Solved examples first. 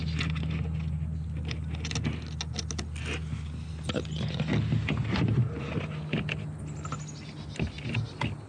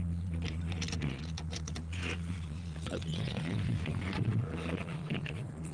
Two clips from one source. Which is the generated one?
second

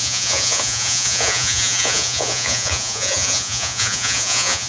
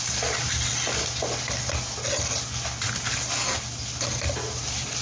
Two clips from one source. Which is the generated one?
first